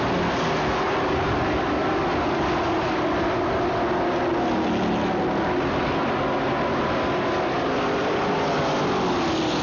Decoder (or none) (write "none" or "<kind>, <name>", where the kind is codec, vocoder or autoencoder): none